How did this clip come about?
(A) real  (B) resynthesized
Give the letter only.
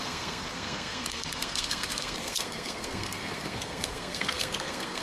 B